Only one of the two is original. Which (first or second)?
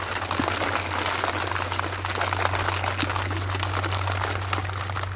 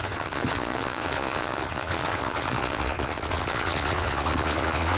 first